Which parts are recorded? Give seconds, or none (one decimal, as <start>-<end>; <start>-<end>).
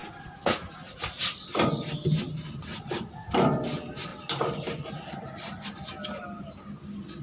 1.1-2.7; 3.3-7.2